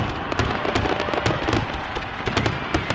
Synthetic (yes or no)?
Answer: no